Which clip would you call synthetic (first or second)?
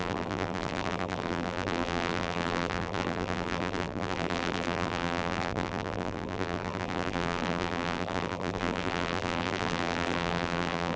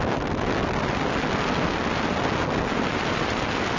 first